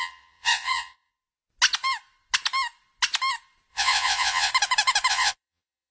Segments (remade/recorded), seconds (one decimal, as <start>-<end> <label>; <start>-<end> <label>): 0.0-1.1 remade; 1.1-3.7 recorded; 3.7-4.5 remade; 4.5-5.1 recorded; 5.1-5.9 remade